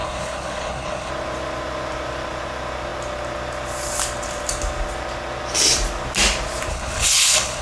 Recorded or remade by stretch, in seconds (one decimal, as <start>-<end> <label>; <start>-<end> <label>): 0.0-1.1 remade; 1.1-6.7 recorded; 6.7-7.6 remade